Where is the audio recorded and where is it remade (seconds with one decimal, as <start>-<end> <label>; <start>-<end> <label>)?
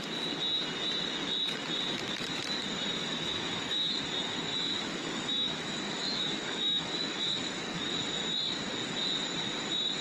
0.0-3.0 recorded; 3.0-4.0 remade; 4.0-4.5 recorded; 4.5-7.9 remade; 7.9-10.0 recorded